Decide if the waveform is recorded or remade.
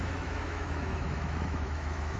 remade